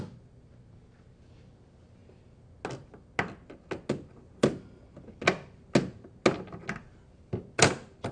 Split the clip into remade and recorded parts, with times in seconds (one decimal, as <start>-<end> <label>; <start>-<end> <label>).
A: 0.0-8.1 recorded